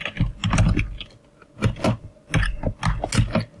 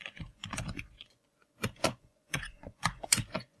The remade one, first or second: second